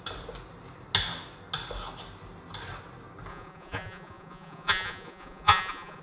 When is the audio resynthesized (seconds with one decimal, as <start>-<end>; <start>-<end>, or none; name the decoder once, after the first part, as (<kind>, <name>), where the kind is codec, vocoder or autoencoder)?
3.3-6.0 (vocoder, Vocos)